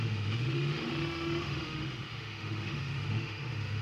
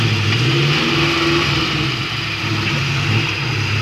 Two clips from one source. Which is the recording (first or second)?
second